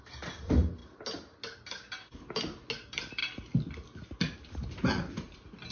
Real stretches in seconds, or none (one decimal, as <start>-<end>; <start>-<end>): 0.0-5.7